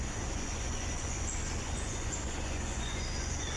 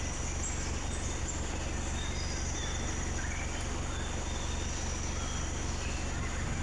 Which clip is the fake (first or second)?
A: first